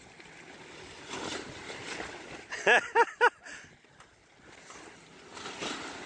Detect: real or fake real